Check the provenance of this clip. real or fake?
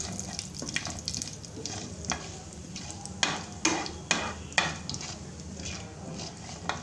real